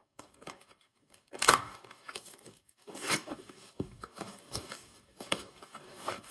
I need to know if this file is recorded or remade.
remade